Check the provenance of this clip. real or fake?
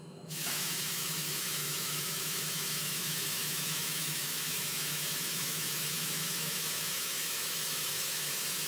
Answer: fake